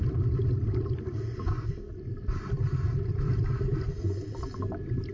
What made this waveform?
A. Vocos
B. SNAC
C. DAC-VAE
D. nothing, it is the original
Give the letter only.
D